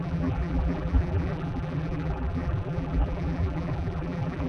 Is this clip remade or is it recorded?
remade